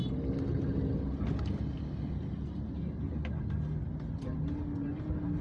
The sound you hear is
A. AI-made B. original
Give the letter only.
B